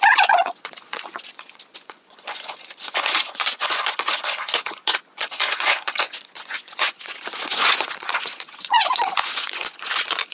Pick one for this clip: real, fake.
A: fake